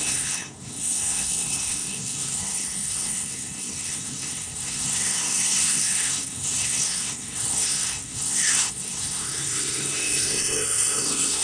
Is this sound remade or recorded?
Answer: remade